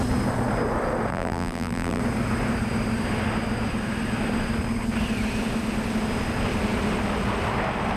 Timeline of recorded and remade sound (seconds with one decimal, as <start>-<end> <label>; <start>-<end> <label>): 0.0-1.1 recorded; 1.1-2.0 remade; 2.0-8.0 recorded